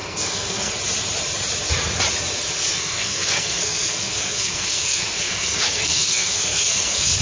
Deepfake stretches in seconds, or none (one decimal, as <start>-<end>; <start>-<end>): 0.0-0.7; 2.7-7.2